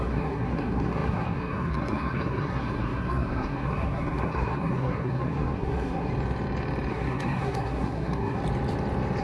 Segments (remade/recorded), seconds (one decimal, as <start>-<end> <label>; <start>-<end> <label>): 0.0-6.1 remade; 6.1-6.9 recorded; 6.9-8.4 remade; 8.4-9.2 recorded